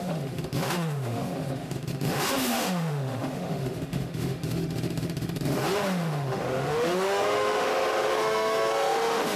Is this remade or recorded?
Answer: remade